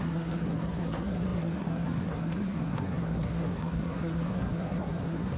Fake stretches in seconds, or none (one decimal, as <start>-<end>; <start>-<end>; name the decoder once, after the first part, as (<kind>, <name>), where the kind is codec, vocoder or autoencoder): 0.0-5.4 (codec, SNAC)